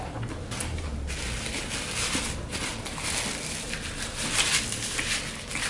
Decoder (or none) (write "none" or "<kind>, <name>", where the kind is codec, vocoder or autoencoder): none